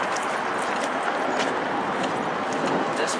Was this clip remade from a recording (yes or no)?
no